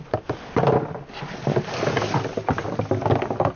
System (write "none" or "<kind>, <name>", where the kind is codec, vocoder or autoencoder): none